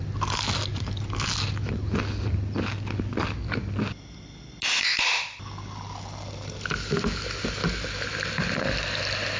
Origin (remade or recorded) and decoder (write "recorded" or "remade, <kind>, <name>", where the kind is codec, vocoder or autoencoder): recorded